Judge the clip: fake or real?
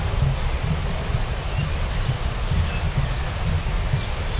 real